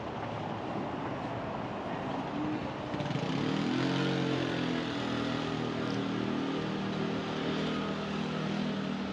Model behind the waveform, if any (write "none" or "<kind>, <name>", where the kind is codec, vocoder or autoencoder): none